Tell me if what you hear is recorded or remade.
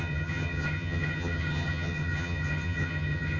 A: remade